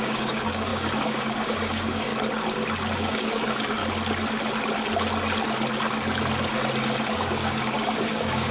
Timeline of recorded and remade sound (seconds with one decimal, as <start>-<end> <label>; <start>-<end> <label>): 0.0-2.1 remade; 2.1-2.9 recorded; 2.9-3.8 remade; 3.8-7.1 recorded; 7.1-8.5 remade